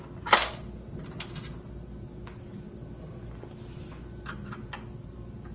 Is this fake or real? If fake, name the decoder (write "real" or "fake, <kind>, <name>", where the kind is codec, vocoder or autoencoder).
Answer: real